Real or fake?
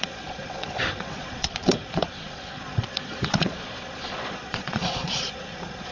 fake